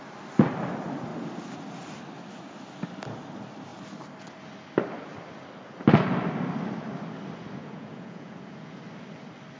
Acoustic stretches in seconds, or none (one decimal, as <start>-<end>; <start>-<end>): 0.0-7.6; 8.8-9.6